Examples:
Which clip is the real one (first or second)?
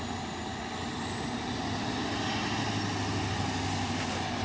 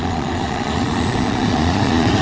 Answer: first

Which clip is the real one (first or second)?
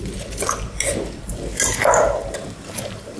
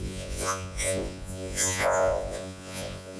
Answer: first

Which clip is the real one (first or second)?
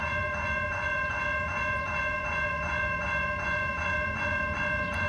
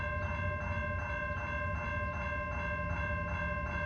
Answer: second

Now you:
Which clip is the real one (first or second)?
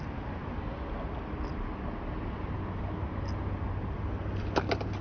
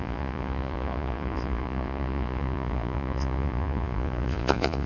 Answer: first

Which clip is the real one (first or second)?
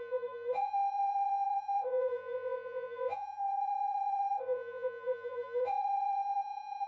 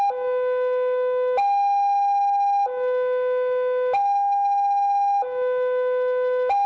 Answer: second